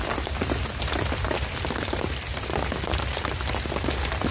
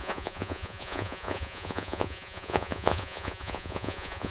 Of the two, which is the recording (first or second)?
first